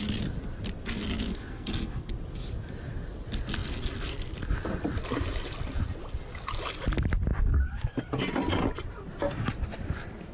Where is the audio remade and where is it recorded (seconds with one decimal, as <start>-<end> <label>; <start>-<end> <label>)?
0.0-1.3 recorded; 1.3-2.1 remade; 2.1-10.3 recorded